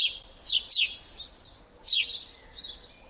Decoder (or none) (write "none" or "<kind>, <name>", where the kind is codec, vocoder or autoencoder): none